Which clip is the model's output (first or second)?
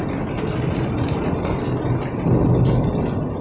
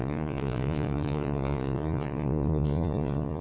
second